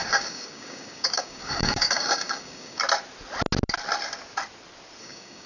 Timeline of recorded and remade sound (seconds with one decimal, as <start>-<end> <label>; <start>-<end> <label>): 0.0-2.8 remade; 2.8-5.0 recorded; 5.0-5.5 remade